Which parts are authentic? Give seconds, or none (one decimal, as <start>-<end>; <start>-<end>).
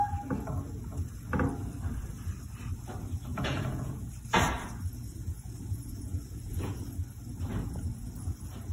0.0-3.3; 4.1-5.1; 6.8-8.7